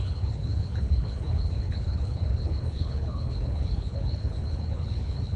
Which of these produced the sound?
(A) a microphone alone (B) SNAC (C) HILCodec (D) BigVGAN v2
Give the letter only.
C